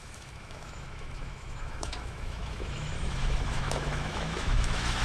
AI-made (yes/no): yes